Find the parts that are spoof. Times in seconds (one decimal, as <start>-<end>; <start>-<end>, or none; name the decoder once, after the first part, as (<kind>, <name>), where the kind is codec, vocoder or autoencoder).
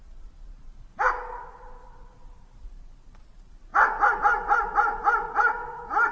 0.0-3.7 (vocoder, BigVGAN v2); 4.2-6.1